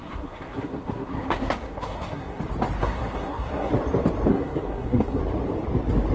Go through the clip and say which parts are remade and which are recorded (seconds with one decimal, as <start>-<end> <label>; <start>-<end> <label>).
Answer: 0.0-2.4 remade; 2.4-2.8 recorded; 2.8-3.7 remade; 3.7-4.3 recorded; 4.3-5.2 remade; 5.2-6.1 recorded